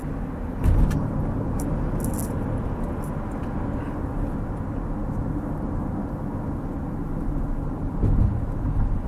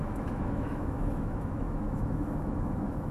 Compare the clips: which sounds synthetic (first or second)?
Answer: second